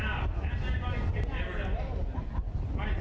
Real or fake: real